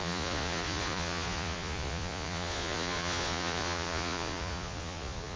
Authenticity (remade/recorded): remade